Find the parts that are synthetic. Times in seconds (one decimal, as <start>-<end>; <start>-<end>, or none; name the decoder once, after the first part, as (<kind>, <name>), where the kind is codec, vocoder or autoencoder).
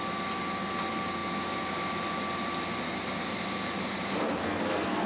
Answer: 4.4-5.1 (codec, SNAC)